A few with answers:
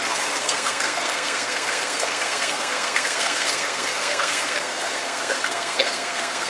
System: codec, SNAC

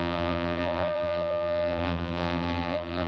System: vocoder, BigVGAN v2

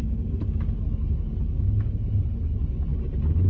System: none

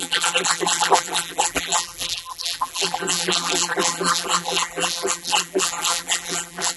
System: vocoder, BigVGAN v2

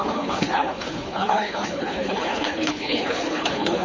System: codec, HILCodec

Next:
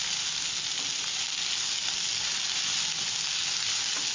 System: none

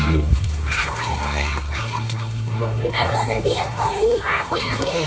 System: codec, SNAC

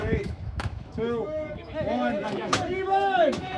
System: autoencoder, DAC-VAE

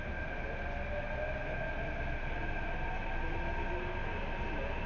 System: none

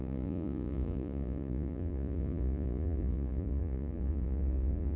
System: vocoder, Vocos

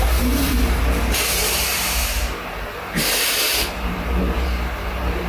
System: vocoder, BigVGAN v2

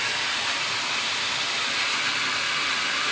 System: none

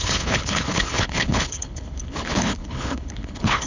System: codec, HILCodec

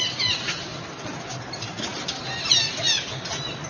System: none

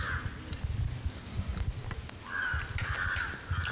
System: none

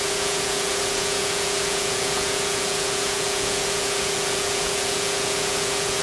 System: vocoder, Vocos